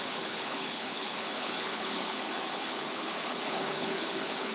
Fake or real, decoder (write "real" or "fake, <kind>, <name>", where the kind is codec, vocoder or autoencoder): fake, codec, HILCodec